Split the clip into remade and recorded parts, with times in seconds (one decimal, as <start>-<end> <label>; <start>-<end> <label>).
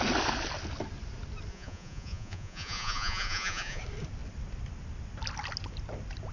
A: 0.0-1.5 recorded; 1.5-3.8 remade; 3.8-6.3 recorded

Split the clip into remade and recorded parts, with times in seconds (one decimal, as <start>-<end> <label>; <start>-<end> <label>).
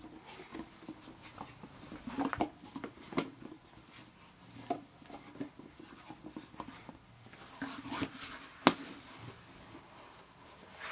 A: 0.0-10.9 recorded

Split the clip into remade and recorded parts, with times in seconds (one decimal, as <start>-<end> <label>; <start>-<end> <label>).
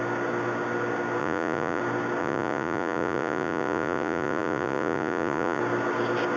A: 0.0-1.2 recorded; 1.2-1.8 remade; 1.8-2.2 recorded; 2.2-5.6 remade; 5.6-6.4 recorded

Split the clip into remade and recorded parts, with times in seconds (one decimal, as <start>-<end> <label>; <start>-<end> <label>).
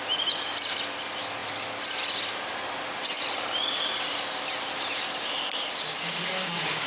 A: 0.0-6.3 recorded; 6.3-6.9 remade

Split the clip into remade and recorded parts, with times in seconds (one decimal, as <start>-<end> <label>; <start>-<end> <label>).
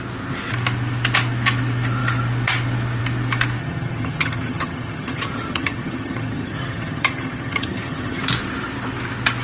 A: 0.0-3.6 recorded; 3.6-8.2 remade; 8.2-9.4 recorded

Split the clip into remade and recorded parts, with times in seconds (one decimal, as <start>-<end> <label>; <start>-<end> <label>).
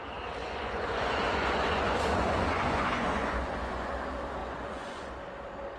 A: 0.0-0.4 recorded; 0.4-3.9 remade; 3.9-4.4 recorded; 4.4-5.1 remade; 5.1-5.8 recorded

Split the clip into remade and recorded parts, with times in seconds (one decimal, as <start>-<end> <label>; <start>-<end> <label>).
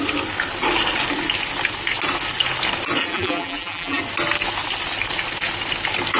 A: 0.0-3.0 recorded; 3.0-4.0 remade; 4.0-6.2 recorded